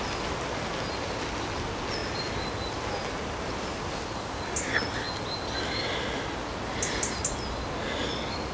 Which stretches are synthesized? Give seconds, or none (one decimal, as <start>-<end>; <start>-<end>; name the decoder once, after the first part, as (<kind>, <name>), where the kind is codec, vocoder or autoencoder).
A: none